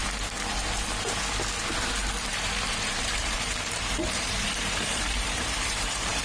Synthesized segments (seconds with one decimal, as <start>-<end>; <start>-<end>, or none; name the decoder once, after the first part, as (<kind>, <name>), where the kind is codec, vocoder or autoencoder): 2.3-6.2 (vocoder, BigVGAN v2)